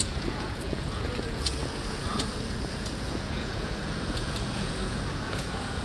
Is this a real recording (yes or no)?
no